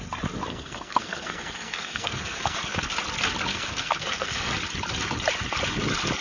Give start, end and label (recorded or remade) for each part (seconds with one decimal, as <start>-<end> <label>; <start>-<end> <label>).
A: 0.0-0.5 recorded; 0.5-2.8 remade; 2.8-3.5 recorded; 3.5-4.5 remade; 4.5-6.2 recorded